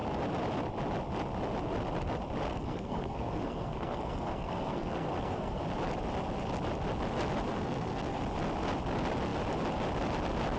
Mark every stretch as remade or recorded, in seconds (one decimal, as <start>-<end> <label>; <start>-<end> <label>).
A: 0.0-2.5 recorded; 2.5-5.6 remade; 5.6-7.5 recorded; 7.5-8.2 remade; 8.2-10.6 recorded